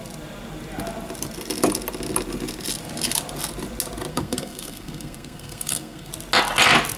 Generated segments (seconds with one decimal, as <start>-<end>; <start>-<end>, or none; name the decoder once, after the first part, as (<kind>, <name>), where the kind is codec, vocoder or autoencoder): 4.1-6.1 (codec, SNAC)